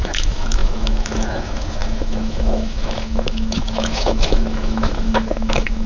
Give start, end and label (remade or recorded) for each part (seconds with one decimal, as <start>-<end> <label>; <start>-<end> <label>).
0.0-5.9 remade